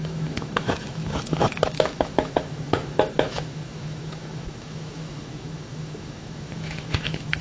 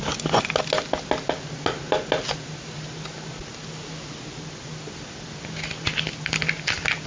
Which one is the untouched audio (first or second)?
second